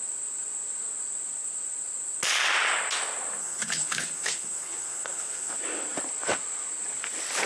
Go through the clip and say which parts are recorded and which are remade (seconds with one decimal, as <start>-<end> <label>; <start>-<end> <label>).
0.0-3.4 recorded; 3.4-5.5 remade; 5.5-7.5 recorded